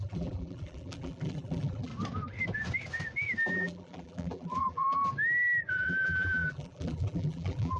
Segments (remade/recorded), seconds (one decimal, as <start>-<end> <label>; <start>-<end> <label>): 0.0-1.9 remade; 1.9-3.5 recorded; 3.5-5.0 remade; 5.0-5.7 recorded; 5.7-7.8 remade